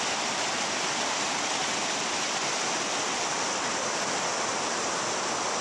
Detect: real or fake real